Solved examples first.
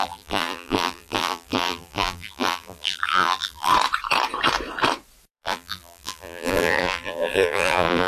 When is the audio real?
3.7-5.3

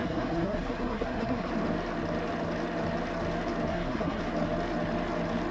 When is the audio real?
1.5-3.7; 4.2-5.5

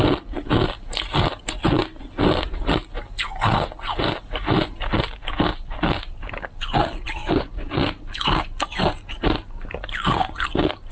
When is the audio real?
0.0-7.2; 7.8-10.9